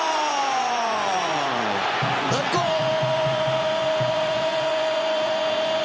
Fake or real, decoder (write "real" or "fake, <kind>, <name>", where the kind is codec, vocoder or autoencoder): fake, vocoder, Vocos